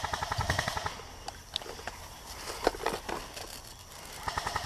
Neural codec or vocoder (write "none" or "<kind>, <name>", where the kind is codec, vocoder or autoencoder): none